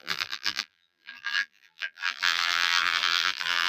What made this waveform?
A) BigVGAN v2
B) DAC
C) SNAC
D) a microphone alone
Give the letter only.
A